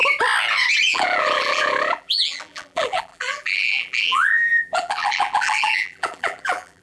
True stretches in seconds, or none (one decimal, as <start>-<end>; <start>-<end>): 0.0-0.9